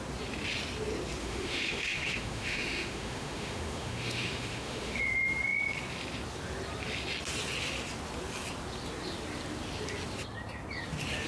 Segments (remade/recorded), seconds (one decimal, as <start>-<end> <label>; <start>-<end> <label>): 0.0-1.2 recorded; 1.2-5.0 remade; 5.0-11.3 recorded